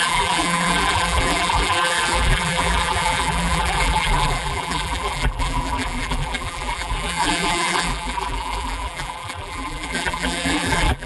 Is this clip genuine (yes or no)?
no